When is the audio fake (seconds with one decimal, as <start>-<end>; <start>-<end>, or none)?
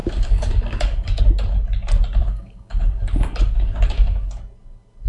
0.0-1.2; 2.2-4.4